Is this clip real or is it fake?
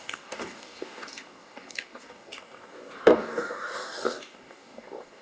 fake